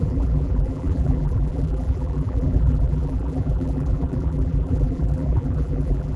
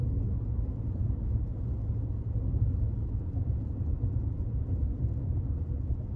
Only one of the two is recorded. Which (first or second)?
second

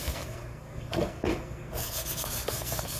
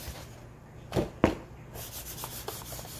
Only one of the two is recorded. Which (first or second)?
second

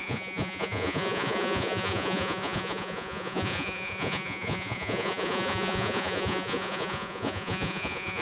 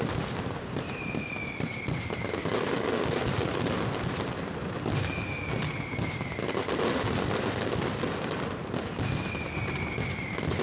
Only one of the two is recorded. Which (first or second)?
second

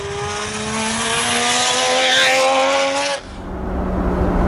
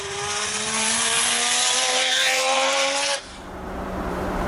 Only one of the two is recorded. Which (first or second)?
first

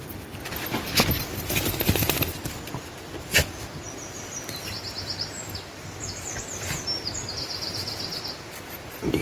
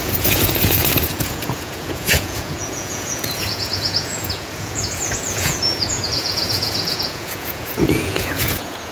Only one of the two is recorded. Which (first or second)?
first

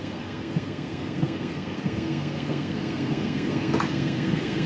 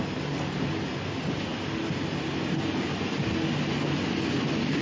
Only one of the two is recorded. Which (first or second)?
second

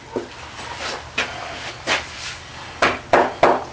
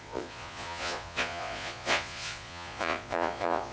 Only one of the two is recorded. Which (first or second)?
first